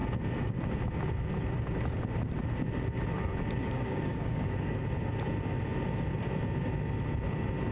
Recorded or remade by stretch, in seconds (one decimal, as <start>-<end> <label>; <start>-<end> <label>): 0.0-3.6 recorded; 3.6-4.8 remade; 4.8-7.7 recorded